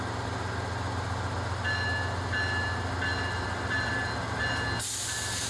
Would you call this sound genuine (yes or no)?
yes